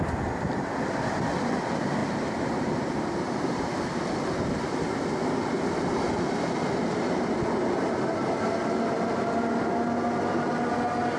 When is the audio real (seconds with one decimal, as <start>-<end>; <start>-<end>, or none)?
0.0-11.2